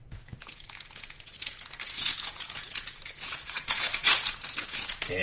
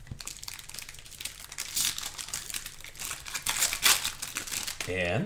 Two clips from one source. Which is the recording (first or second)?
second